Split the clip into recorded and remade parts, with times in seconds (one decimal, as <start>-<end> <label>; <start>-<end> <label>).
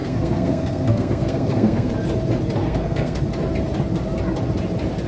0.0-1.9 remade; 1.9-2.6 recorded; 2.6-3.2 remade; 3.2-5.1 recorded